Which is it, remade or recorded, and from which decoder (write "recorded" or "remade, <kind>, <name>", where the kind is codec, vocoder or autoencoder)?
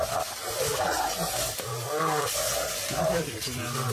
recorded